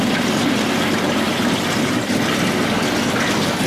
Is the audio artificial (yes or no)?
no